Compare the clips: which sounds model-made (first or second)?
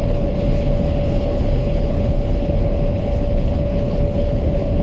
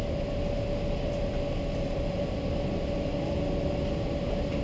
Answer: first